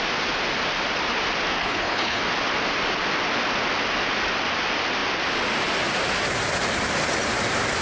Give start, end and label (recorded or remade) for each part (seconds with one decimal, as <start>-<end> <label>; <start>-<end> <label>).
0.0-1.6 recorded; 1.6-2.2 remade; 2.2-7.8 recorded